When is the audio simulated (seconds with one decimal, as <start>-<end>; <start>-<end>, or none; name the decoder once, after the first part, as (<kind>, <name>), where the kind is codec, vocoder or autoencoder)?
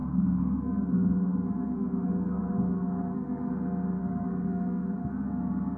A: 0.0-3.5 (codec, SNAC); 4.0-5.3